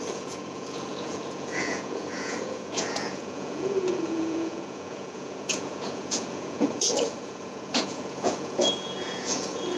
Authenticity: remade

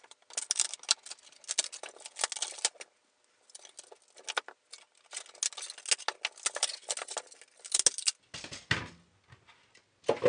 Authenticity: recorded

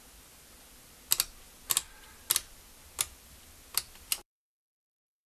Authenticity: recorded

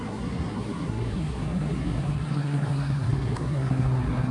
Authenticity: remade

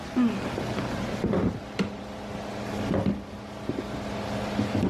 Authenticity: recorded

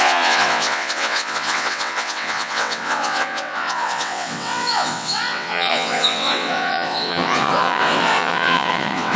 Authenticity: remade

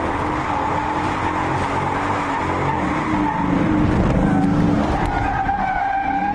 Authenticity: recorded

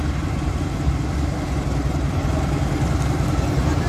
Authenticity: recorded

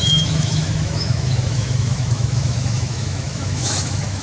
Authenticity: remade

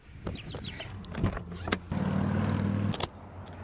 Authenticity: recorded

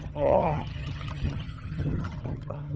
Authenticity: remade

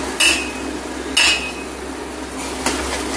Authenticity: recorded